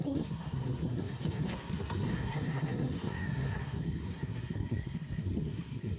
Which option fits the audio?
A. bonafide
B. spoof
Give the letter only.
B